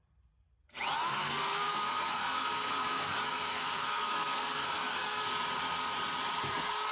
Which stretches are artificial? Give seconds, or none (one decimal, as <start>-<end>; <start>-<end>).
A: 1.1-5.3

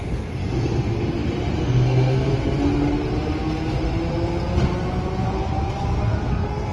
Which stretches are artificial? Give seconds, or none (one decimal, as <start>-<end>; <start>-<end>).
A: 0.0-0.4; 1.6-2.3; 6.3-6.7

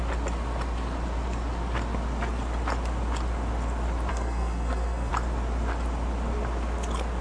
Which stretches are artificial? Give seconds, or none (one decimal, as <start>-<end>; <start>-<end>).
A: 4.1-5.1

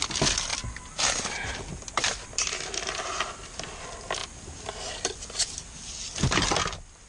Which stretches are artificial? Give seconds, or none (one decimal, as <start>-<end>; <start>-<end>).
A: none

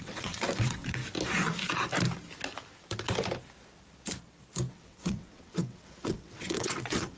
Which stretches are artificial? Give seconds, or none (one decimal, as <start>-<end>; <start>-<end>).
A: 0.0-1.0; 4.7-7.2

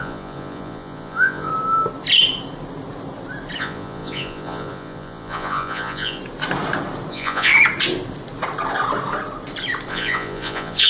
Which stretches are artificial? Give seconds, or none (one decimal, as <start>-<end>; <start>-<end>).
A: 0.0-1.5; 3.6-6.2; 7.1-7.5; 9.9-10.9